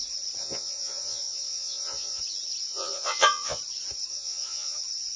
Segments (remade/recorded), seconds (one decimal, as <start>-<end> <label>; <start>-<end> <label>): 0.0-0.4 recorded; 0.4-2.2 remade; 2.2-2.7 recorded; 2.7-3.6 remade; 3.6-4.1 recorded; 4.1-4.8 remade; 4.8-5.2 recorded